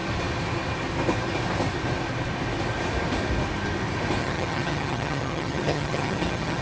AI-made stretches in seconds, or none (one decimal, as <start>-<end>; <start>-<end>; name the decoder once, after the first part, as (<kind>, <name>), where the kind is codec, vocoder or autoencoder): 4.2-6.6 (vocoder, HiFi-GAN)